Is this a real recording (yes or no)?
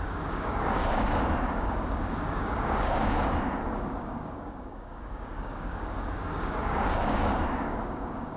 no